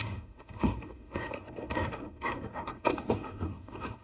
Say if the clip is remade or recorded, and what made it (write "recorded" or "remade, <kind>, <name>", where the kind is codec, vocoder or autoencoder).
remade, codec, SNAC